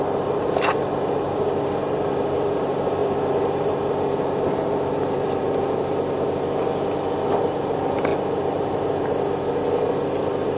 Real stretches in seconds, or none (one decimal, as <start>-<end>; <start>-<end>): 0.0-10.6